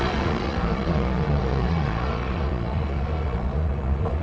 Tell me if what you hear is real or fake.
fake